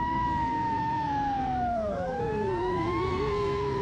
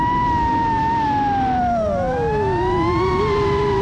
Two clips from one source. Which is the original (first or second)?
second